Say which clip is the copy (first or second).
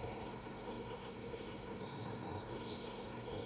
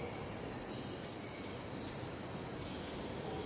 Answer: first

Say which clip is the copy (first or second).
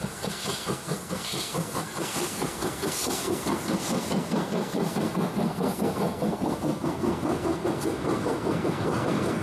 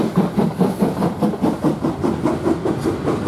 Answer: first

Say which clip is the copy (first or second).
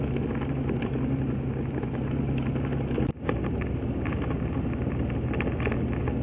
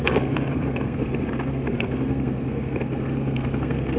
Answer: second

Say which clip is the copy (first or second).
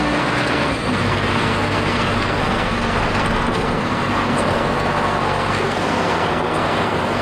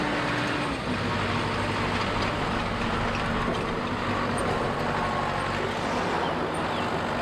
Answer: first